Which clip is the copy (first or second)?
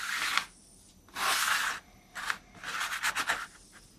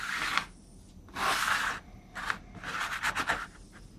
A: second